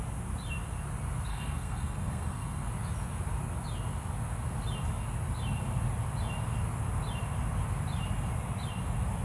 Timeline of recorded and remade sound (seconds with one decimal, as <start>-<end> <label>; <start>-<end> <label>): 0.0-1.3 recorded; 1.3-2.7 remade; 2.7-9.2 recorded